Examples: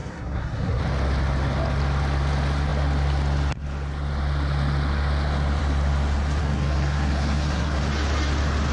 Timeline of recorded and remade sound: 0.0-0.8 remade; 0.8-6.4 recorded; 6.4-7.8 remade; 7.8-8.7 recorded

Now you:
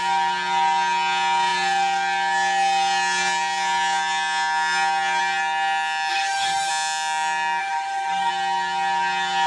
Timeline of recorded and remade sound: 0.0-6.1 recorded; 6.1-6.7 remade; 6.7-7.6 recorded; 7.6-8.3 remade; 8.3-9.5 recorded

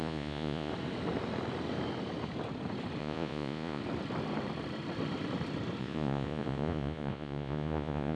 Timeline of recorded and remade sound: 0.0-0.7 remade; 0.7-3.0 recorded; 3.0-3.8 remade; 3.8-5.8 recorded; 5.8-8.2 remade

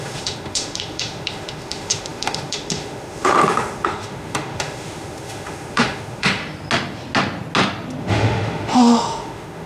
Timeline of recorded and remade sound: 0.0-6.4 remade; 6.4-8.0 recorded; 8.0-9.7 remade

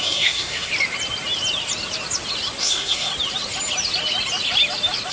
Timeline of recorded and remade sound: 0.0-0.7 remade; 0.7-2.6 recorded; 2.6-3.1 remade; 3.1-5.1 recorded

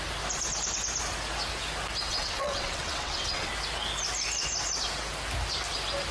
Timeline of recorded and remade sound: 0.0-2.1 recorded; 2.1-3.5 remade; 3.5-6.1 recorded